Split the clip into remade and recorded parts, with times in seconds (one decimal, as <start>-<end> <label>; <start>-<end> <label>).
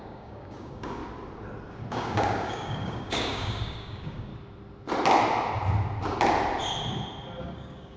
0.0-1.0 remade; 1.0-1.9 recorded; 1.9-4.3 remade; 4.3-7.4 recorded; 7.4-8.0 remade